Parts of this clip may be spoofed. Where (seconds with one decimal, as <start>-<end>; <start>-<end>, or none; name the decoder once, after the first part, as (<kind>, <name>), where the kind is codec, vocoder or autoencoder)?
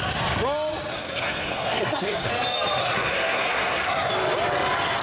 0.9-2.3 (codec, SNAC); 2.8-4.1